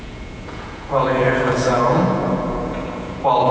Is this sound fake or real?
fake